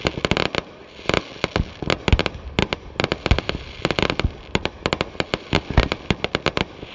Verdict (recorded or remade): recorded